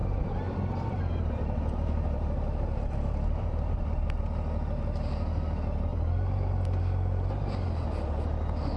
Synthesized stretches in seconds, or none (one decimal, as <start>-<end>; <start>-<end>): 0.0-3.8; 5.9-6.8